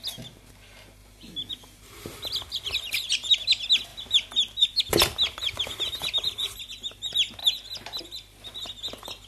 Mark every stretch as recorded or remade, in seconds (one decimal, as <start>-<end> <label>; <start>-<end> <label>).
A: 0.0-7.4 recorded; 7.4-8.0 remade; 8.0-9.3 recorded